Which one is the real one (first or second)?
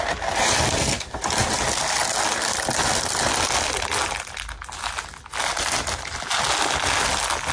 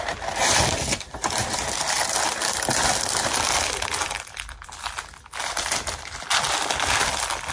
first